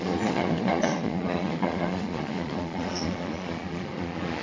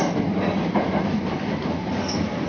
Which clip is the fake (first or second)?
first